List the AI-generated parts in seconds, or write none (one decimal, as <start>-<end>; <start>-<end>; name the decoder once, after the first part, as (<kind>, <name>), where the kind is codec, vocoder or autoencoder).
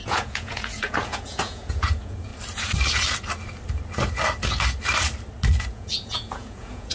0.0-2.3 (vocoder, Vocos); 5.7-6.9